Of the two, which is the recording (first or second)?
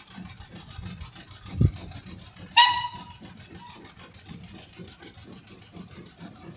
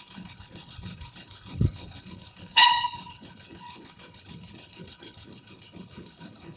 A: first